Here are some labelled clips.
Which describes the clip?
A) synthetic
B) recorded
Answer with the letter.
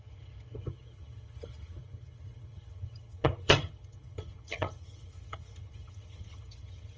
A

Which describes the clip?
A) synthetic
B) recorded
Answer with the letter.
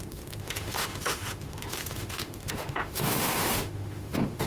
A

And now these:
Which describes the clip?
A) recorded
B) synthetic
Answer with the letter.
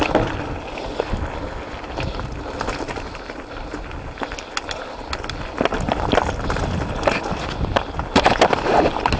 A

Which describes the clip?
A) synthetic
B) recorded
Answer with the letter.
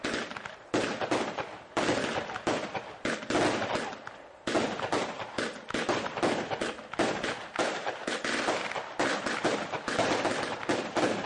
B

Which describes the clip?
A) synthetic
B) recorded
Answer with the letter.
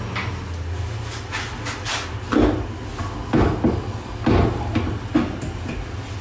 B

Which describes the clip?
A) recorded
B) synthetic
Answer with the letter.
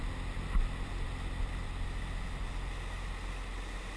A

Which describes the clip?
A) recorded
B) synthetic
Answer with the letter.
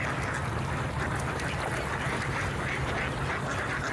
A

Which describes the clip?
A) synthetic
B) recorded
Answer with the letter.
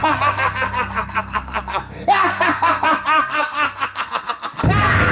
A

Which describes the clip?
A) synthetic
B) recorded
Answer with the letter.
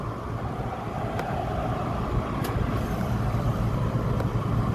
B